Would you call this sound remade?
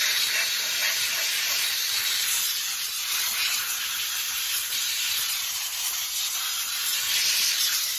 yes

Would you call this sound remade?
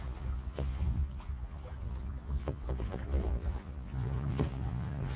yes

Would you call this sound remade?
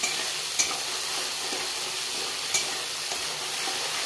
no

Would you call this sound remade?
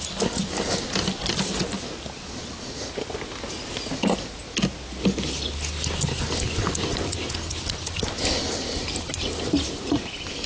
no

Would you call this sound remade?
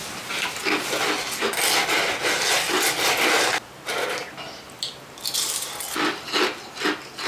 no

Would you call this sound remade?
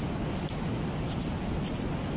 no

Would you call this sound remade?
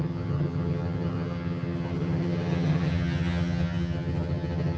yes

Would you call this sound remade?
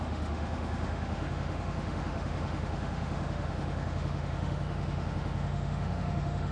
yes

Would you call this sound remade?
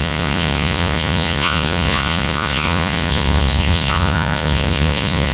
yes